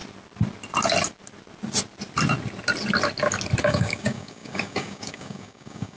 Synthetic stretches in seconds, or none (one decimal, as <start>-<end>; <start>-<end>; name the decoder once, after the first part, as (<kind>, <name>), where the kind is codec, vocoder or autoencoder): 3.6-6.0 (codec, DAC)